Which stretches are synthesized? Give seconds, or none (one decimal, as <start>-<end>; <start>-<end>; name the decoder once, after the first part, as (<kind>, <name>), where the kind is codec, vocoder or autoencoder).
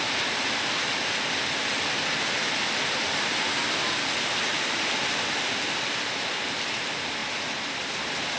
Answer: none